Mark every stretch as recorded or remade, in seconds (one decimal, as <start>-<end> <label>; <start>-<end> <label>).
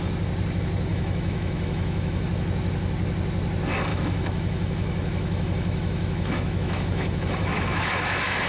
0.0-0.9 recorded; 0.9-2.3 remade; 2.3-3.9 recorded; 3.9-8.5 remade